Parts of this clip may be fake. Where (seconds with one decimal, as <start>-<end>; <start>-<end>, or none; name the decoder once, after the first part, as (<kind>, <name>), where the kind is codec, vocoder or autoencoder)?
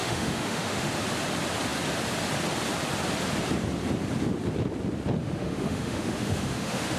0.0-0.9 (autoencoder, DAC-VAE); 5.2-7.0